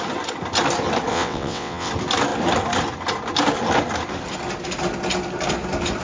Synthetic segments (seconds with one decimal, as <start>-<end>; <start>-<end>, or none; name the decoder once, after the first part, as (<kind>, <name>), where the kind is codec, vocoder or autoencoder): 1.1-1.9 (vocoder, WaveNeXt)